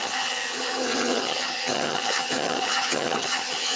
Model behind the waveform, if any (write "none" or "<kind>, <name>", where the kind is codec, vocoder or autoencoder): vocoder, HiFi-GAN